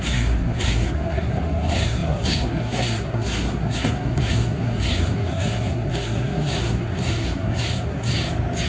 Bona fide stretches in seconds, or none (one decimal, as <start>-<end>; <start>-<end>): 8.1-8.7